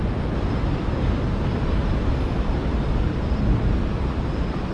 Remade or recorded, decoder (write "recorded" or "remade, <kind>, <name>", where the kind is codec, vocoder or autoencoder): recorded